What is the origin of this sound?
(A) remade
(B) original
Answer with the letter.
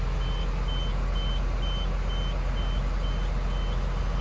B